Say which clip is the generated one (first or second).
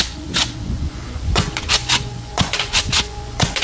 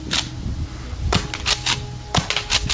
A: first